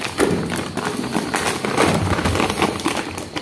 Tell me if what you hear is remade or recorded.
remade